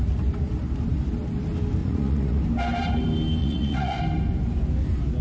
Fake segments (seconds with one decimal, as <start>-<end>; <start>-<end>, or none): 1.8-2.4; 3.4-4.0

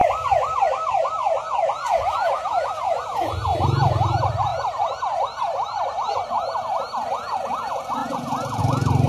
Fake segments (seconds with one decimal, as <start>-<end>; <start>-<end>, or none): none

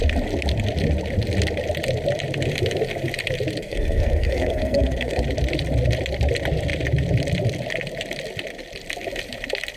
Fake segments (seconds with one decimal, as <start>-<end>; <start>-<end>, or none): 3.6-5.2

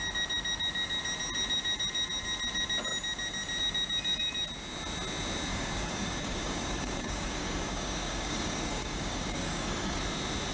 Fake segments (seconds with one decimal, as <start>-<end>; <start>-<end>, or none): 5.5-10.0

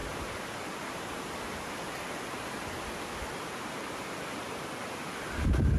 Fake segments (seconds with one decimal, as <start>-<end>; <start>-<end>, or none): none

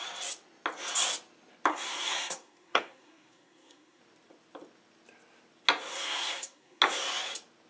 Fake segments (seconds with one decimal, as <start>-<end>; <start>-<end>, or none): 1.7-4.0; 5.9-6.8

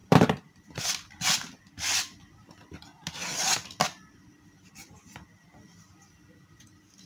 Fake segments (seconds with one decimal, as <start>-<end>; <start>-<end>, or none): 0.0-0.8

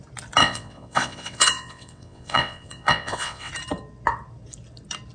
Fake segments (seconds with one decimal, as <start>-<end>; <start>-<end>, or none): 0.4-3.5